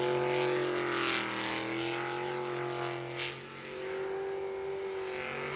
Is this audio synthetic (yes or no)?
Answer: no